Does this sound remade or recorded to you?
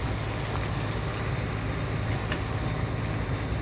recorded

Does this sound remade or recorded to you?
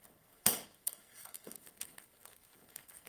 remade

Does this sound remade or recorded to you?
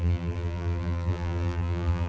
remade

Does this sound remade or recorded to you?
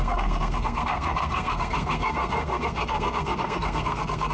remade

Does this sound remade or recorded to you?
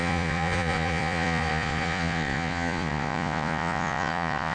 remade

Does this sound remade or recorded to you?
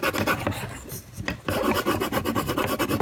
remade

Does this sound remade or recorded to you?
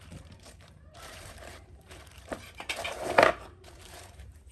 remade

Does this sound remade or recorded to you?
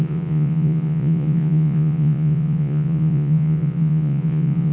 remade